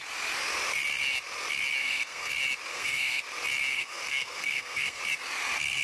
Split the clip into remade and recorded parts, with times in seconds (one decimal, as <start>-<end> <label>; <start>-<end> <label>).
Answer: 0.0-1.8 recorded; 1.8-2.3 remade; 2.3-2.7 recorded; 2.7-3.2 remade; 3.2-3.7 recorded; 3.7-5.0 remade; 5.0-5.8 recorded